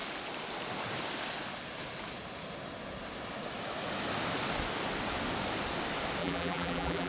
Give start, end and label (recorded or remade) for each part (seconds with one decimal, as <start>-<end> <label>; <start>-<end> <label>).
0.0-6.2 recorded; 6.2-7.1 remade